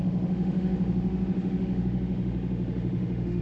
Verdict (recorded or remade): remade